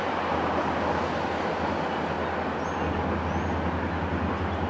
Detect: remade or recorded recorded